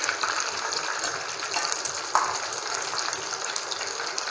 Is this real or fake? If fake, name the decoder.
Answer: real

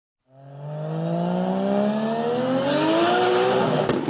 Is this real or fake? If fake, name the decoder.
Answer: real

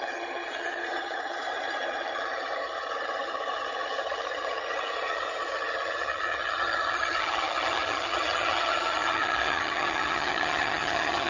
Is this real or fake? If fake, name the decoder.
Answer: fake, vocoder, HiFi-GAN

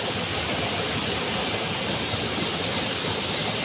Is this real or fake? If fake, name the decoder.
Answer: real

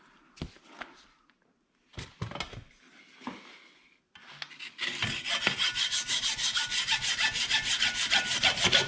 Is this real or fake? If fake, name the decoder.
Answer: real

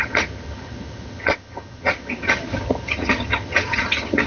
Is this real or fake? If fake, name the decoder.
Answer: fake, vocoder, HiFi-GAN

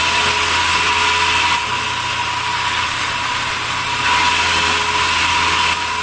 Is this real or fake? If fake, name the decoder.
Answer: real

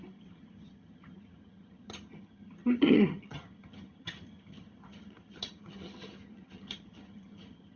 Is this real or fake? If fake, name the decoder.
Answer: fake, vocoder, HiFi-GAN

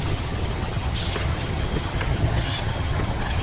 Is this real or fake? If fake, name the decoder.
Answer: fake, vocoder, HiFi-GAN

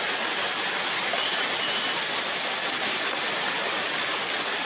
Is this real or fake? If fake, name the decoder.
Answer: real